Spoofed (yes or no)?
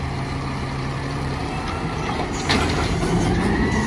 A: yes